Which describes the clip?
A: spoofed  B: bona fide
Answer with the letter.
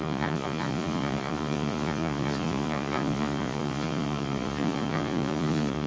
A